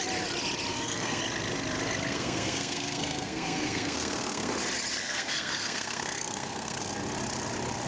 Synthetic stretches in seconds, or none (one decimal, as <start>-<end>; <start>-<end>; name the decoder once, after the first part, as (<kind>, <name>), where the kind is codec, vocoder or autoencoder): 0.7-1.2 (codec, SNAC); 2.1-4.5; 5.0-6.8